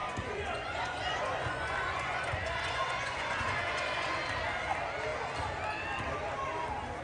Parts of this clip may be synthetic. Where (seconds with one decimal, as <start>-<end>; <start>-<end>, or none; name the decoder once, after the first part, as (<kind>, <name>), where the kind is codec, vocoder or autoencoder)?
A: 0.0-4.2 (vocoder, Vocos)